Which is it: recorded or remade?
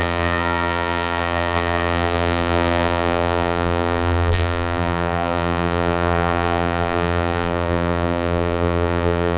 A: remade